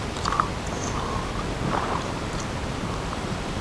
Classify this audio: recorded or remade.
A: recorded